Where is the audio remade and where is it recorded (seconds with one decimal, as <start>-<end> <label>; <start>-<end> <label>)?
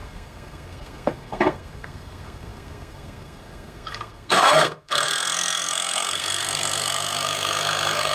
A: 0.0-8.1 remade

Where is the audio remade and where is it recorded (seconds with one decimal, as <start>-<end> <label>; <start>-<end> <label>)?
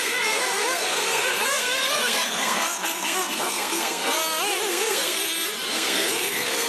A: 0.0-4.2 remade; 4.2-4.7 recorded; 4.7-5.2 remade; 5.2-5.7 recorded; 5.7-6.7 remade